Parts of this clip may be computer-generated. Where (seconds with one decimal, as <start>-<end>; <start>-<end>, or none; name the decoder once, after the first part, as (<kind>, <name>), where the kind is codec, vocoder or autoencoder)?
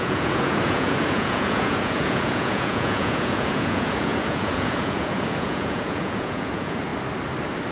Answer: 0.0-6.9 (vocoder, Vocos)